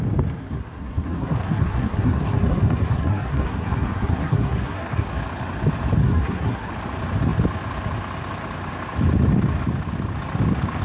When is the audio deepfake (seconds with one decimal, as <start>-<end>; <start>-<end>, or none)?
0.4-5.1; 6.0-6.7